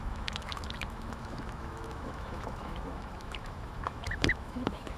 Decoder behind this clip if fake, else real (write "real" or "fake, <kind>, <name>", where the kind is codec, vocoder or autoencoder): fake, autoencoder, DAC-VAE